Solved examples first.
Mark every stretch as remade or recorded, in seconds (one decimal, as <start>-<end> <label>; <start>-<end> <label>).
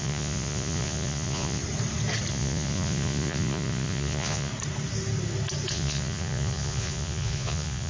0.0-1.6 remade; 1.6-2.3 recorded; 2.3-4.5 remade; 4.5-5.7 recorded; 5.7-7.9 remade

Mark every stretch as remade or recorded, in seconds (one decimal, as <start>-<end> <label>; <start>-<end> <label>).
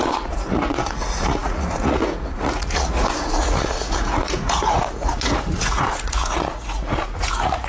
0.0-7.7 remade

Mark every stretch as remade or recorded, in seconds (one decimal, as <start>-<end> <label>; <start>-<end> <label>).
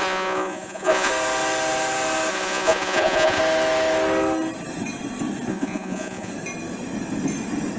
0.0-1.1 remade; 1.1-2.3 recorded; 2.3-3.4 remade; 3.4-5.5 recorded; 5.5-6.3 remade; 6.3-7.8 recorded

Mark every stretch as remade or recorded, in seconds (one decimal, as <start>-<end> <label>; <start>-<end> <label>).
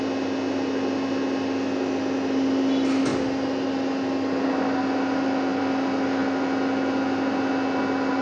0.0-8.2 recorded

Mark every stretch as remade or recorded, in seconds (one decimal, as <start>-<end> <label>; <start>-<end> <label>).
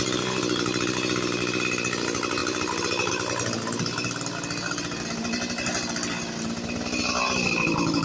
0.0-8.0 recorded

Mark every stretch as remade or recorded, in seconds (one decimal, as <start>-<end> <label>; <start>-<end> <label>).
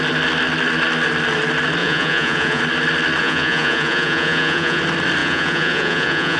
0.0-1.8 recorded; 1.8-2.6 remade; 2.6-3.2 recorded; 3.2-4.8 remade; 4.8-5.2 recorded; 5.2-6.4 remade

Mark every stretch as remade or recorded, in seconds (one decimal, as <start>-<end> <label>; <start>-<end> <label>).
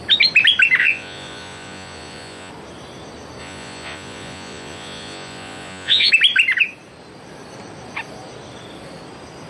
0.0-0.8 recorded; 0.8-2.5 remade; 2.5-3.4 recorded; 3.4-6.1 remade; 6.1-9.5 recorded